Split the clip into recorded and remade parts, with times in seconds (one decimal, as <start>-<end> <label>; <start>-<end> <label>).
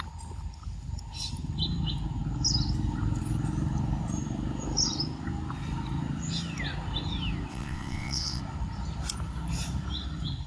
0.0-7.5 recorded; 7.5-8.4 remade; 8.4-10.5 recorded